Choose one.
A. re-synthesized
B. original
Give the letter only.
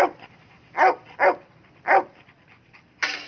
B